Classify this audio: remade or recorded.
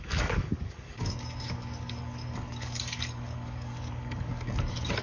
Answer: remade